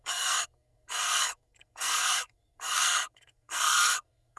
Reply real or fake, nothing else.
fake